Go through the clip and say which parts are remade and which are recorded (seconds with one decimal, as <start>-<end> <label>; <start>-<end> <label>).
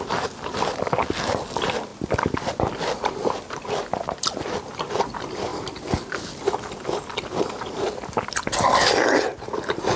0.0-10.0 recorded